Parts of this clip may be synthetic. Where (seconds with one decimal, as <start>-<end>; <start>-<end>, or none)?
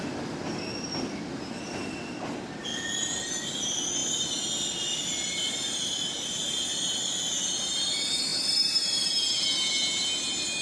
2.7-3.3; 4.0-7.3; 8.3-9.1